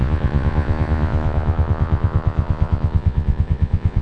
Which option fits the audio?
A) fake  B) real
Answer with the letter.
A